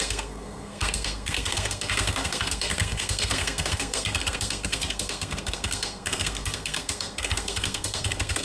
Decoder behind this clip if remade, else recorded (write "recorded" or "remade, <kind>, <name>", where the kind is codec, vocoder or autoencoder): remade, codec, SNAC